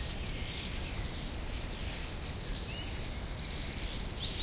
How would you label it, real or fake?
real